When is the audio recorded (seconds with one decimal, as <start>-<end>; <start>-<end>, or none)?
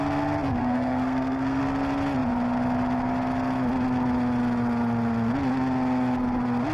0.0-0.6; 1.6-6.7